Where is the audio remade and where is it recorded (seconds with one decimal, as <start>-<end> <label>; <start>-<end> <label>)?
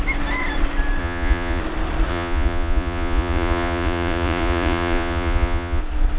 0.0-1.0 recorded; 1.0-1.6 remade; 1.6-2.1 recorded; 2.1-5.8 remade; 5.8-6.2 recorded